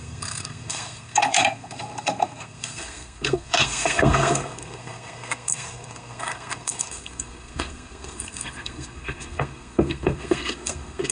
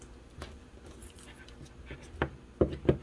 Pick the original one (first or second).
second